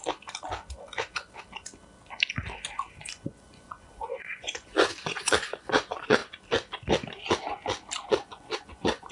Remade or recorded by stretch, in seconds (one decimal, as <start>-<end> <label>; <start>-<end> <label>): 0.0-2.9 recorded; 2.9-6.2 remade; 6.2-8.1 recorded; 8.1-9.1 remade